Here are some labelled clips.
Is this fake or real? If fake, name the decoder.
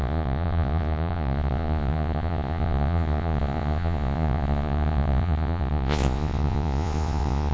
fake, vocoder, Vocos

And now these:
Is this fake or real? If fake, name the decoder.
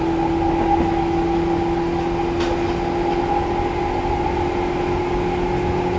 real